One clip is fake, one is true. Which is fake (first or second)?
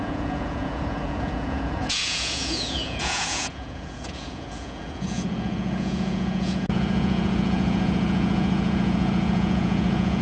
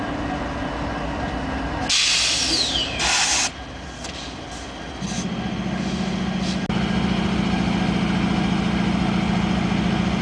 first